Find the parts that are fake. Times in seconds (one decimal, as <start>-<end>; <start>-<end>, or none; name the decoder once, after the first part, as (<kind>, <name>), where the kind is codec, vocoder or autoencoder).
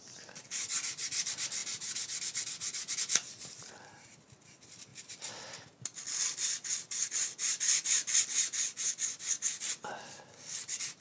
none